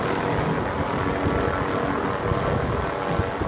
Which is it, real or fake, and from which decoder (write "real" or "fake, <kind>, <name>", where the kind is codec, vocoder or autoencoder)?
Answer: real